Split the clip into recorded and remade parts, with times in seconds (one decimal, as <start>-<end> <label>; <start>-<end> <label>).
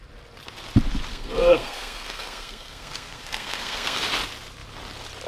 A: 0.0-1.1 recorded; 1.1-4.0 remade; 4.0-5.3 recorded